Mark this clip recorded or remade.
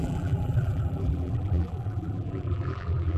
remade